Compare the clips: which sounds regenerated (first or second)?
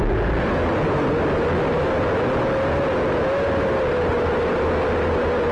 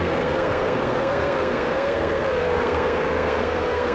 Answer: second